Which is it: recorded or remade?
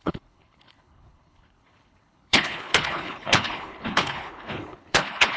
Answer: remade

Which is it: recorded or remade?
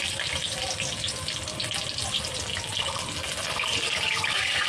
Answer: recorded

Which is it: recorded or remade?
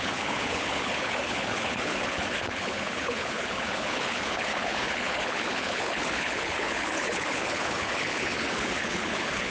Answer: remade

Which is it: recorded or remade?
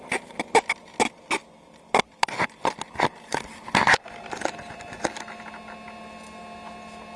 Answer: recorded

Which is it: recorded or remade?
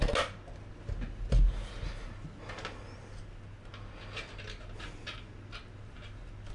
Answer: recorded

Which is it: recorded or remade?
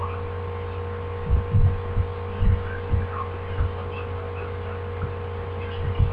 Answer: recorded